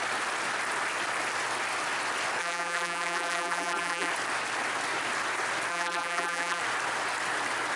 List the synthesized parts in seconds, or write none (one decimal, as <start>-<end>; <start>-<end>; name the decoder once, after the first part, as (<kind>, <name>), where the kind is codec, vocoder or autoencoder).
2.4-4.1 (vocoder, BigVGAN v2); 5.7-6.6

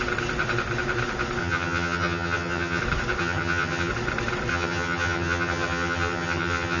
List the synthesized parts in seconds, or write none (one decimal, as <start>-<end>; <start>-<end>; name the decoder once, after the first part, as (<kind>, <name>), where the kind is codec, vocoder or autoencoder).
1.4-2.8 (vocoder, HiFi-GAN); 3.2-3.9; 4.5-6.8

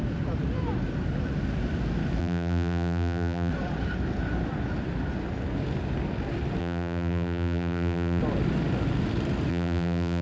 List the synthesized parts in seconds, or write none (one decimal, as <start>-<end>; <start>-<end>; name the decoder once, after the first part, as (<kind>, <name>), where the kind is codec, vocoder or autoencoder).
2.2-3.5 (vocoder, BigVGAN v2); 6.6-8.2; 9.5-10.2

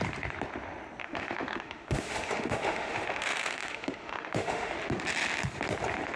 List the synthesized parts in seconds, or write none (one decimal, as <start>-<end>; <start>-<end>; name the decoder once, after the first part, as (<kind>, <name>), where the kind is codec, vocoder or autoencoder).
1.0-4.7 (autoencoder, DAC-VAE)

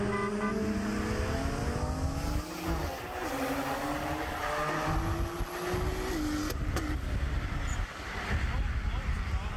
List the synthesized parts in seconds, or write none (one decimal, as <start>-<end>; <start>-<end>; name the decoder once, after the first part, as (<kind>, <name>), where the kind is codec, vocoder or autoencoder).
none